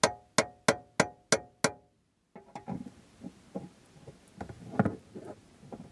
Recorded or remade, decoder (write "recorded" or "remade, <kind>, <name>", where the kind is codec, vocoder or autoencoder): recorded